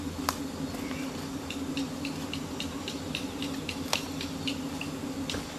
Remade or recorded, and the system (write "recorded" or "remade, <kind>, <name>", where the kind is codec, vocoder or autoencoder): recorded